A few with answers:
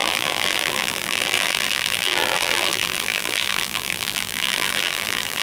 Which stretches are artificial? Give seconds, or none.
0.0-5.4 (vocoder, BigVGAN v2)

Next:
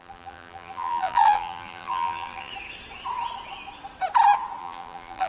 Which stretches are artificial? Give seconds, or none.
0.0-2.5 (vocoder, BigVGAN v2); 4.6-5.3

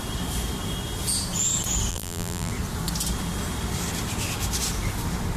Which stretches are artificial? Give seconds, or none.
1.9-2.5 (vocoder, BigVGAN v2)

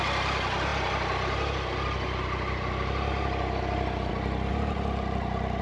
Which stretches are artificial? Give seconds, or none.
4.5-5.6 (vocoder, BigVGAN v2)

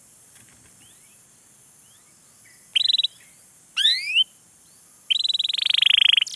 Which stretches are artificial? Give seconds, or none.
0.0-6.4 (vocoder, BigVGAN v2)

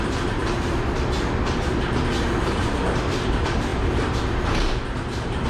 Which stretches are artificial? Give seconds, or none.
0.0-0.4 (vocoder, BigVGAN v2); 2.6-5.5